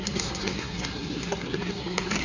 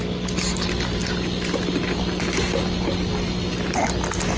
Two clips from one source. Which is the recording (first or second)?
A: second